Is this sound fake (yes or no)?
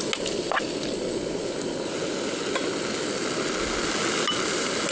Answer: no